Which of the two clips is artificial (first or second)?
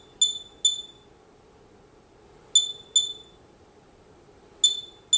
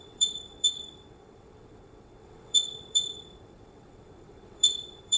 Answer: second